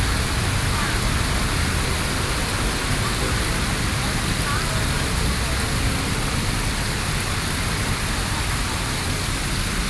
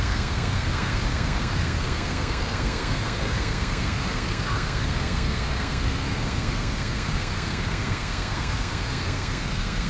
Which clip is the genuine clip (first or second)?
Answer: first